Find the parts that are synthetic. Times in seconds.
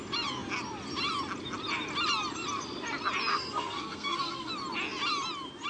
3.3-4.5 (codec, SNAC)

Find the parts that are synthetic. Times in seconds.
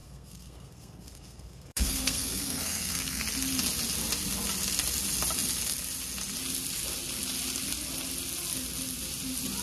0.0-3.2 (codec, SNAC)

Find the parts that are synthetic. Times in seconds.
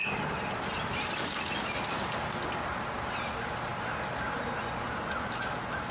none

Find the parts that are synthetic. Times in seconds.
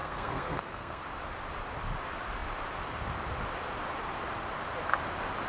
0.0-1.0 (codec, SNAC)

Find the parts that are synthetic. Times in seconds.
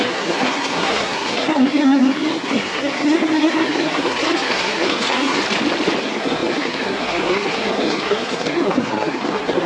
0.0-5.4 (codec, SNAC); 6.0-9.7